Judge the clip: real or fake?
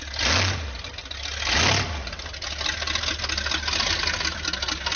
real